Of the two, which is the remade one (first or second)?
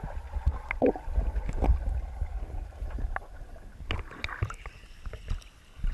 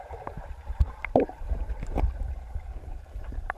second